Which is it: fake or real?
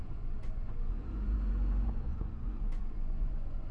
fake